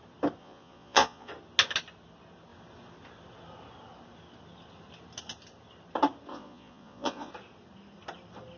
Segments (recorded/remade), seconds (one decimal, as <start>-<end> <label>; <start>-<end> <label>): 0.0-0.4 recorded; 0.4-1.3 remade; 1.3-6.3 recorded; 6.3-7.3 remade; 7.3-8.6 recorded